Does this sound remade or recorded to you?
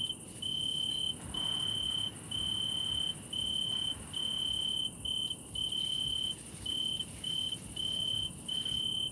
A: recorded